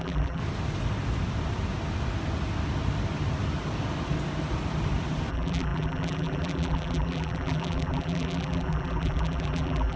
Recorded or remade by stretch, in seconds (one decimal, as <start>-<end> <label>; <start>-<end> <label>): 0.0-0.4 remade; 0.4-5.3 recorded; 5.3-10.0 remade